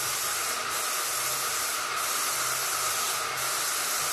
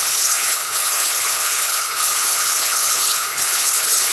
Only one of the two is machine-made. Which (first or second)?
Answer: second